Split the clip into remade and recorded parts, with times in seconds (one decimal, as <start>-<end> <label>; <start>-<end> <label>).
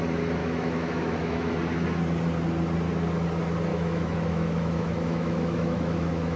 0.0-0.4 recorded; 0.4-1.5 remade; 1.5-3.7 recorded; 3.7-6.4 remade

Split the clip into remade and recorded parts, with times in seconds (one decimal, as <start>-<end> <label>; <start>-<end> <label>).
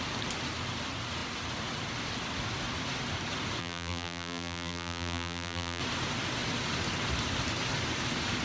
0.0-3.6 recorded; 3.6-5.8 remade; 5.8-8.4 recorded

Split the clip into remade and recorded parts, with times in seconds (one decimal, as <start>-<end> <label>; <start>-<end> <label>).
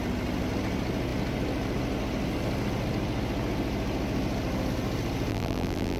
0.0-5.3 recorded; 5.3-6.0 remade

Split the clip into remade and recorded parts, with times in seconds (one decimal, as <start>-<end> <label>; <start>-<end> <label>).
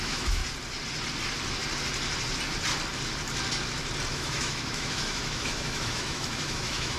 0.0-0.4 remade; 0.4-4.1 recorded; 4.1-7.0 remade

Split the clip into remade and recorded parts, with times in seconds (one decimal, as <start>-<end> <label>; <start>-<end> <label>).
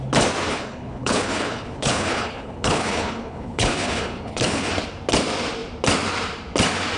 0.0-0.5 recorded; 0.5-4.7 remade; 4.7-7.0 recorded